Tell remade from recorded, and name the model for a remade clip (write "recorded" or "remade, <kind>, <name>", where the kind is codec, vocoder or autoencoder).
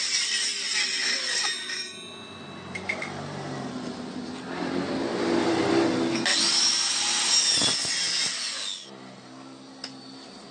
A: recorded